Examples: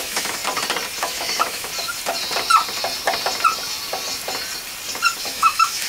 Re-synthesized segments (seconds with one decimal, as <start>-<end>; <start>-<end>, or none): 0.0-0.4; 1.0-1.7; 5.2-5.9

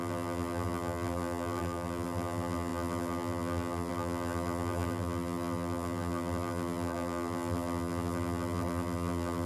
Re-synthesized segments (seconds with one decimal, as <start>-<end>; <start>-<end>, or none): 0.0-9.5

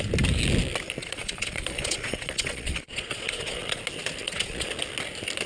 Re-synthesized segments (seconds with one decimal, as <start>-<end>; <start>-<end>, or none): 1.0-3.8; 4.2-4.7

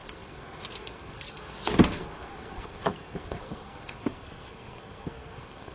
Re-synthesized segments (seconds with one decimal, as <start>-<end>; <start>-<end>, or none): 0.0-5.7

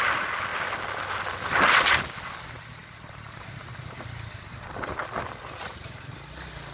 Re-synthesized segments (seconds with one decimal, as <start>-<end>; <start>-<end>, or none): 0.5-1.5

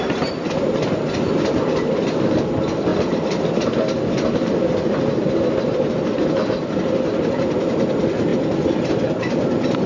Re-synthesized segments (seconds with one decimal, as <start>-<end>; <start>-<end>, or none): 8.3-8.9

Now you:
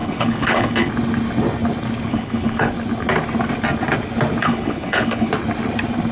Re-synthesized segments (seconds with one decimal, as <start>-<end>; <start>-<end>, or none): 0.0-0.9; 2.1-2.7; 4.4-5.3

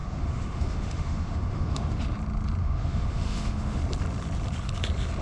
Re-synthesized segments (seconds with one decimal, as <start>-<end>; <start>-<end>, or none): 0.0-2.0; 2.6-3.8